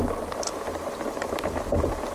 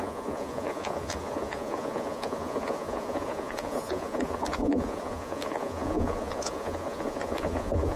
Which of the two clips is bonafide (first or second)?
first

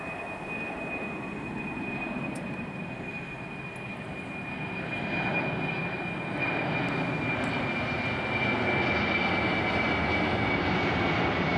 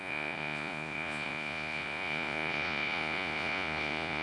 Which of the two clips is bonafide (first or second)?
first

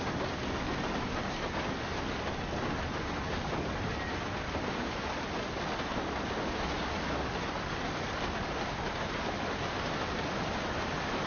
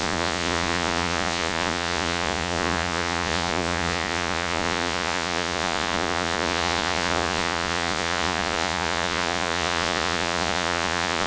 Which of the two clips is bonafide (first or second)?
first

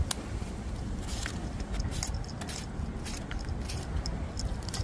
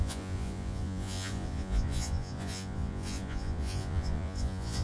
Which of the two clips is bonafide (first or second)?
first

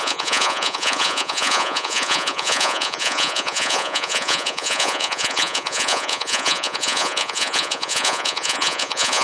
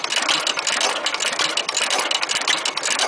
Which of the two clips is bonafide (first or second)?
second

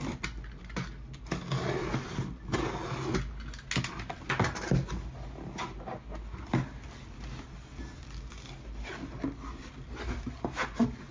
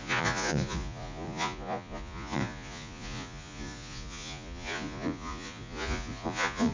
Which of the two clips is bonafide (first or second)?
first